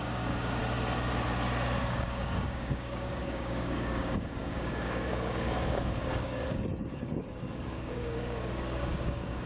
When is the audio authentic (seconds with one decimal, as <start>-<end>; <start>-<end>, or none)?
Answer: 0.6-1.8